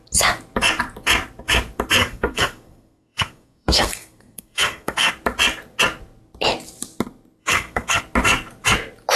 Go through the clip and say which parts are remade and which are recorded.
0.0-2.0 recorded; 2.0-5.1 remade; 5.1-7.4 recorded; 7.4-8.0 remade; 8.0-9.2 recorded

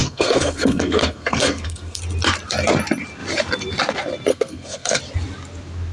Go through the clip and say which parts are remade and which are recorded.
0.0-2.0 remade; 2.0-4.3 recorded; 4.3-5.0 remade; 5.0-5.9 recorded

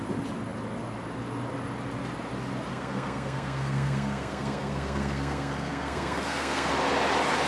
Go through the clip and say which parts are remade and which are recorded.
0.0-2.7 recorded; 2.7-6.7 remade; 6.7-7.5 recorded

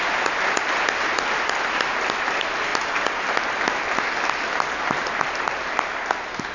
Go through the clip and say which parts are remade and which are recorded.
0.0-6.5 recorded

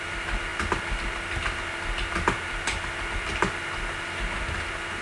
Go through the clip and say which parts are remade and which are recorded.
0.0-5.0 recorded